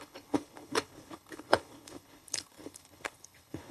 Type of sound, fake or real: fake